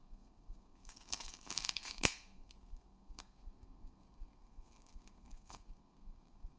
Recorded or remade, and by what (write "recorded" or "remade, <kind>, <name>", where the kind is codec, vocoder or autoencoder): remade, codec, SNAC